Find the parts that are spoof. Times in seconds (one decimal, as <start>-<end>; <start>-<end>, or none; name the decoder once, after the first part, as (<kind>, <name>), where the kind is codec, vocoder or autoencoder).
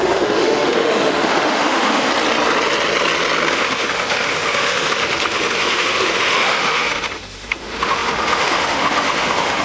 0.0-2.1 (autoencoder, DAC-VAE); 3.5-9.6